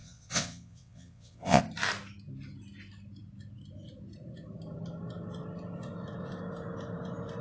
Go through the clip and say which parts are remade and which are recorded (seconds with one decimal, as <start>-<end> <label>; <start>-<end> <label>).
0.0-1.6 remade; 1.6-7.4 recorded